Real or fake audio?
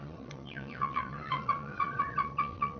fake